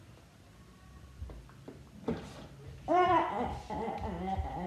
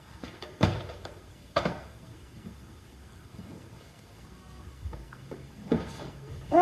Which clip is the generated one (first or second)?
second